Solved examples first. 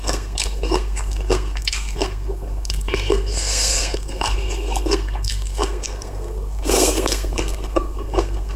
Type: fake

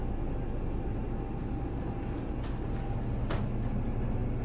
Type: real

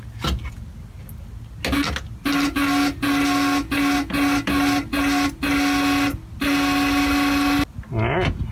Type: real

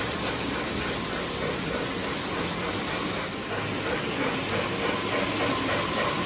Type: real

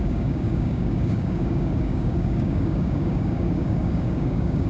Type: fake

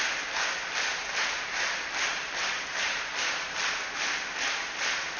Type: real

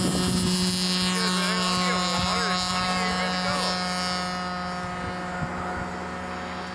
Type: real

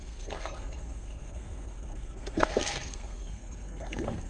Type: fake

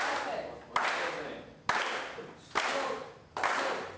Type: real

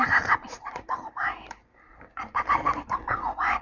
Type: fake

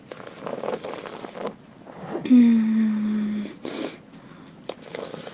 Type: real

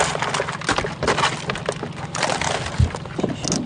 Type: real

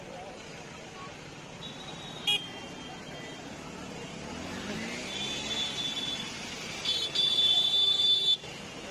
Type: real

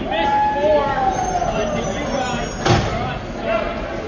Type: real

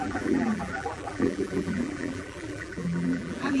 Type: fake